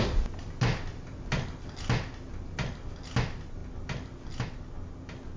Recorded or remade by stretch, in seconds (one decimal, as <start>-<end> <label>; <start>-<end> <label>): 0.0-5.4 recorded